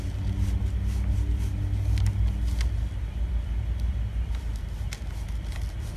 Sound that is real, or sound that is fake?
real